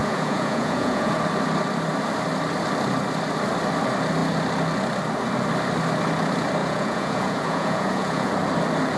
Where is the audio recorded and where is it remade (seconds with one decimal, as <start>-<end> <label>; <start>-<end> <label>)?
0.0-1.1 remade; 1.1-6.6 recorded; 6.6-8.3 remade; 8.3-9.0 recorded